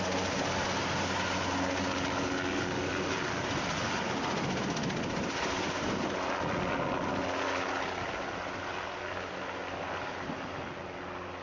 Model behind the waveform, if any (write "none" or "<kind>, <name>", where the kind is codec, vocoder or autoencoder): none